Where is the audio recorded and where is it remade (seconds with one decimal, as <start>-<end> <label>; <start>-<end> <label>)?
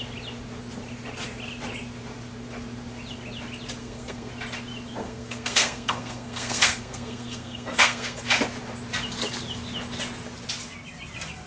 0.0-3.8 recorded; 3.8-4.3 remade; 4.3-5.0 recorded; 5.0-8.2 remade; 8.2-11.5 recorded